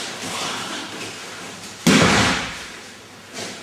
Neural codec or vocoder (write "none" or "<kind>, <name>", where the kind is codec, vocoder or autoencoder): none